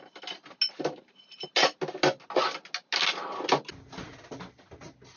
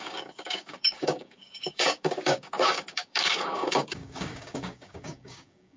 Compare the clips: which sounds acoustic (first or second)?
first